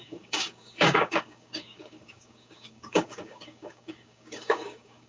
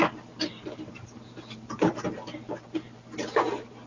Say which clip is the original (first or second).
second